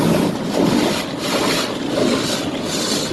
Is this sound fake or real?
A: real